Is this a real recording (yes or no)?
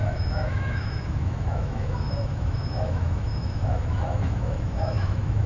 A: no